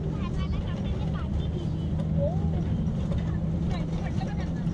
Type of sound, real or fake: real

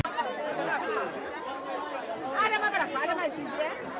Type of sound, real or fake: real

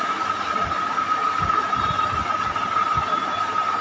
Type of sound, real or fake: real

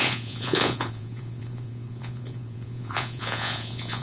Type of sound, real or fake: fake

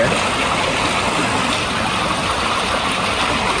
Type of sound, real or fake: real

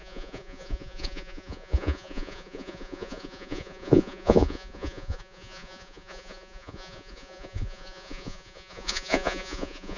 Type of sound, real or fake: fake